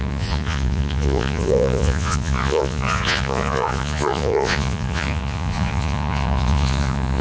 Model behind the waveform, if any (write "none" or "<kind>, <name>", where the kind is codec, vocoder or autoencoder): vocoder, Vocos